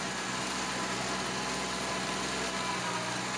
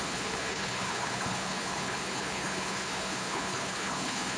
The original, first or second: first